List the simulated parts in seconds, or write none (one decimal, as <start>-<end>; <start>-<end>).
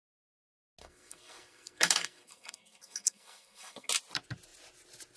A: 0.8-3.9